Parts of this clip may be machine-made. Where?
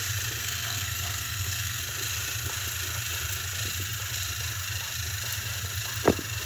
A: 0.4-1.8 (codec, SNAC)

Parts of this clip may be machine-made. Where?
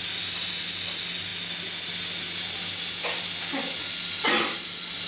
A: none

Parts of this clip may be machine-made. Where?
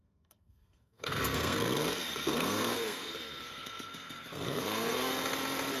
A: 0.0-5.1 (codec, SNAC)